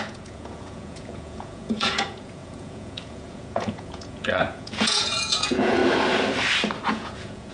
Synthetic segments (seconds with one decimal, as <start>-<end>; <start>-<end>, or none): 0.0-5.8; 6.9-7.5

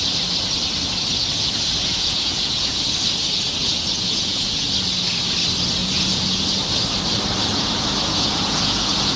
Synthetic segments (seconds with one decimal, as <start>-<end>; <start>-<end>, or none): 1.8-2.8; 3.6-4.7; 5.8-6.4; 7.5-9.2

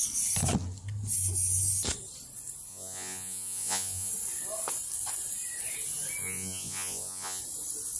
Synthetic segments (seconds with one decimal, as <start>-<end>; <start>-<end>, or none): 2.7-4.1; 6.2-7.4